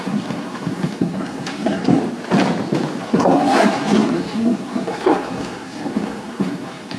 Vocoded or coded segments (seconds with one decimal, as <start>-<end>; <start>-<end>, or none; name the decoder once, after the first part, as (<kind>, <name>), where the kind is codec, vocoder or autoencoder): 0.0-2.0 (codec, SNAC); 3.0-7.0